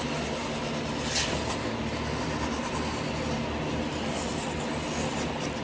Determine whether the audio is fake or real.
real